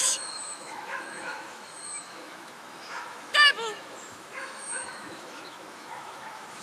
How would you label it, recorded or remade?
remade